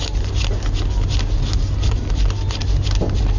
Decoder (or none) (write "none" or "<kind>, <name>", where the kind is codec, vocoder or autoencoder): none